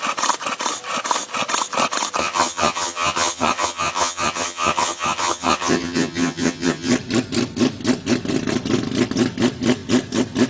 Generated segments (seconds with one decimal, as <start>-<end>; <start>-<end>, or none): 2.2-6.9